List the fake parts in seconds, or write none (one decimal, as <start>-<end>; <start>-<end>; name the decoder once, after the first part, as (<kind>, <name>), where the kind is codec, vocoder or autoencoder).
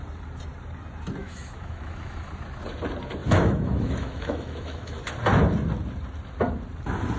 1.2-2.3 (autoencoder, DAC-VAE); 3.2-5.1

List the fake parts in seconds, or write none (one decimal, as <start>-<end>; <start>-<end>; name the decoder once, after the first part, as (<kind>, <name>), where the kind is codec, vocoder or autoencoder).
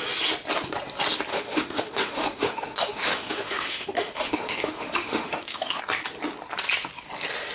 1.3-5.8 (autoencoder, DAC-VAE)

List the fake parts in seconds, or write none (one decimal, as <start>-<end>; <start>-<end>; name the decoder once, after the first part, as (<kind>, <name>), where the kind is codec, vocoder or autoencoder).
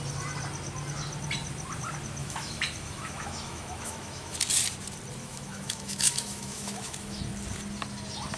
2.2-4.4 (autoencoder, DAC-VAE); 5.2-7.2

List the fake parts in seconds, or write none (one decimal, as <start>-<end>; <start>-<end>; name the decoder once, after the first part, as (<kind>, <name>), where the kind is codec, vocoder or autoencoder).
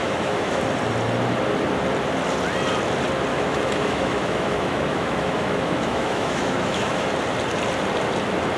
0.0-0.6 (autoencoder, DAC-VAE); 3.3-7.1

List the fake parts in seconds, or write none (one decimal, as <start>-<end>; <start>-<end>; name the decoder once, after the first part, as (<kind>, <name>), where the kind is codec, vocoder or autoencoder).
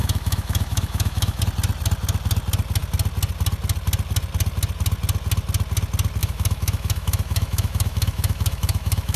0.0-1.4 (autoencoder, DAC-VAE); 6.2-9.2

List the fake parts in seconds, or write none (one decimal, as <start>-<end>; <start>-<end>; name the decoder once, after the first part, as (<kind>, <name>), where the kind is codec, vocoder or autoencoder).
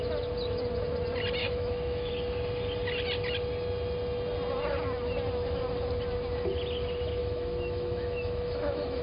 1.4-2.1 (autoencoder, DAC-VAE); 7.2-9.0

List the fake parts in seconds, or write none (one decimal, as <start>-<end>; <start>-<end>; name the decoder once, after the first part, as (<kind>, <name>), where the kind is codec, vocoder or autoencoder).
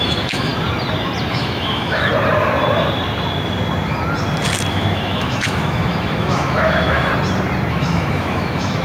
0.0-0.5 (autoencoder, DAC-VAE); 1.3-2.1; 4.7-7.1; 7.7-8.8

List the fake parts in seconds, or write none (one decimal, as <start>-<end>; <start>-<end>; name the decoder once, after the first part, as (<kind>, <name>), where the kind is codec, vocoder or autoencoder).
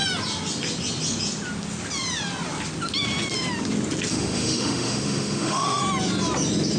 4.1-5.8 (autoencoder, DAC-VAE)